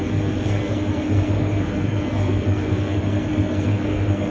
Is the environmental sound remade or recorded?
remade